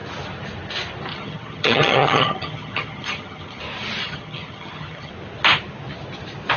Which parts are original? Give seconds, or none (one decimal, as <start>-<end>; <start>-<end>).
0.0-1.1; 3.6-4.0; 5.1-6.6